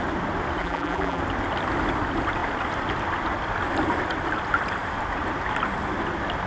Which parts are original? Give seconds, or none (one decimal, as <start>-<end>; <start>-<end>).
0.0-0.6; 1.2-6.5